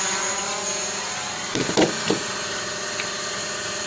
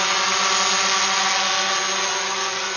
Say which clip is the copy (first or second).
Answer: first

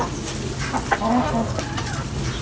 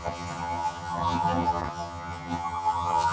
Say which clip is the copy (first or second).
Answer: second